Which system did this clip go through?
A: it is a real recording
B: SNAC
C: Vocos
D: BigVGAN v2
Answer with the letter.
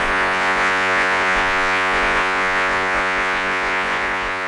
C